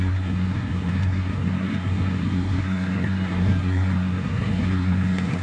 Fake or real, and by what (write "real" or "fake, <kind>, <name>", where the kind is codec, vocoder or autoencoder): fake, codec, SNAC